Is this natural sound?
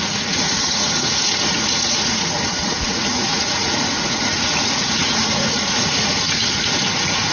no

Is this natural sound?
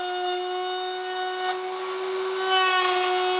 yes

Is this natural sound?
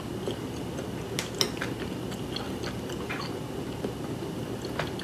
yes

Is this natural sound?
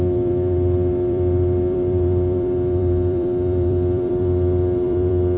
no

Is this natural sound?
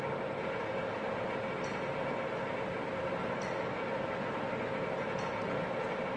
yes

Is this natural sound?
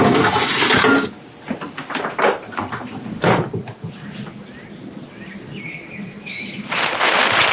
yes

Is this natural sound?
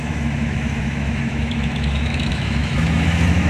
no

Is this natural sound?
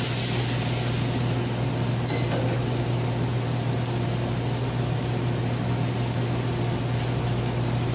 yes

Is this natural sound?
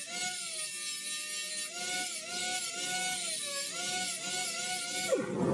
yes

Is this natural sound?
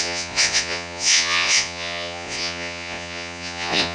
no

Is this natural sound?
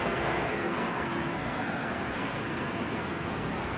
no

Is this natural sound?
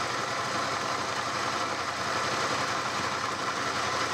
yes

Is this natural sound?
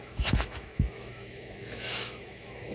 no